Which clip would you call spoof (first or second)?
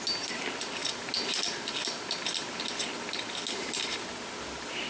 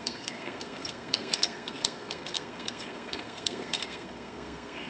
second